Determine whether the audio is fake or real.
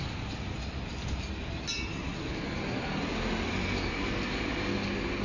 real